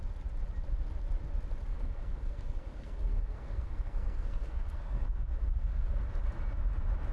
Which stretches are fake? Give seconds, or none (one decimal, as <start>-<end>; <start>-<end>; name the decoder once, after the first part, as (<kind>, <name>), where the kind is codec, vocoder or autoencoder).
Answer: 1.7-6.0 (codec, SNAC)